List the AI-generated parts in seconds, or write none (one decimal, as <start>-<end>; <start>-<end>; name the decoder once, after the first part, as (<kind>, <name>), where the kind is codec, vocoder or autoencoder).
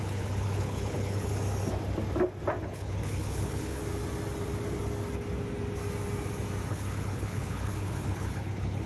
0.0-1.3 (codec, HILCodec); 2.6-3.8; 6.7-8.9